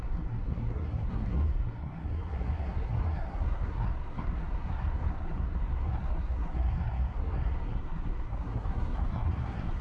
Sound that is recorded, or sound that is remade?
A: remade